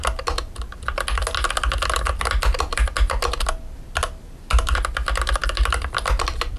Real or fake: real